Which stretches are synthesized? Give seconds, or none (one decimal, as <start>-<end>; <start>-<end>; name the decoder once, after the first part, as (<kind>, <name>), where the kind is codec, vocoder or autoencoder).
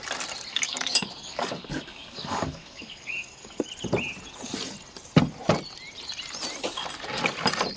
0.5-3.7 (codec, DAC)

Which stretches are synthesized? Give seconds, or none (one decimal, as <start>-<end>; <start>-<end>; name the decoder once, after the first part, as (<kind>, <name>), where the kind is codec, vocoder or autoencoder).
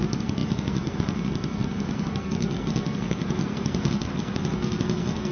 0.0-5.3 (codec, SNAC)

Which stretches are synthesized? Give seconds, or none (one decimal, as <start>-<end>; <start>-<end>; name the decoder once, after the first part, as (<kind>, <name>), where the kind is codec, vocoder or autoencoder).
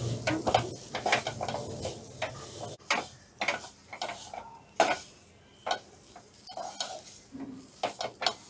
none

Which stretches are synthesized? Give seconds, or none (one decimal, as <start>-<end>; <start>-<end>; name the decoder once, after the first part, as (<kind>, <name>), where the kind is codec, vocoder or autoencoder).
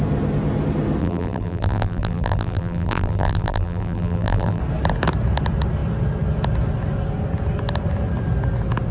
1.0-4.6 (vocoder, BigVGAN v2)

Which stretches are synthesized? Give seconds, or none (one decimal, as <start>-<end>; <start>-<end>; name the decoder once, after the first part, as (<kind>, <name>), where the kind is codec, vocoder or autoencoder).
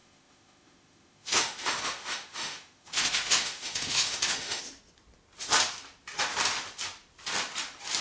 0.0-4.6 (autoencoder, DAC-VAE)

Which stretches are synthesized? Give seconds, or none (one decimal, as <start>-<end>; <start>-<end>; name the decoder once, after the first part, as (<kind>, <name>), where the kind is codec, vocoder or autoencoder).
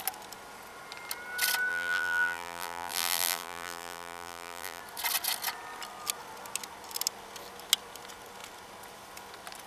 1.7-4.8 (vocoder, BigVGAN v2)